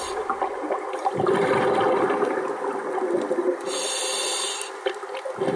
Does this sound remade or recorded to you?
recorded